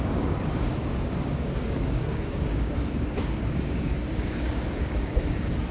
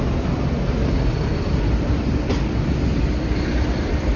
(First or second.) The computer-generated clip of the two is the first